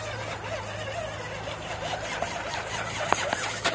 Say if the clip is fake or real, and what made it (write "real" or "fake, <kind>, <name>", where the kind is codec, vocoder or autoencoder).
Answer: real